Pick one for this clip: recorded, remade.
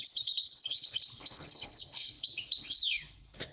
remade